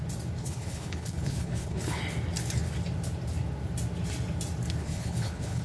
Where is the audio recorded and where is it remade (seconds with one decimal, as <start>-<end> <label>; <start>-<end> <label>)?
0.0-0.4 recorded; 0.4-2.0 remade; 2.0-4.8 recorded; 4.8-5.6 remade